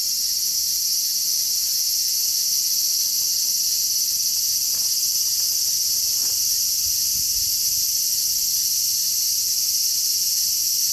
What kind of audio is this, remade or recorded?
recorded